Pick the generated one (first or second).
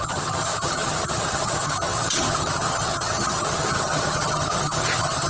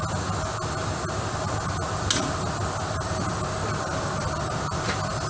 first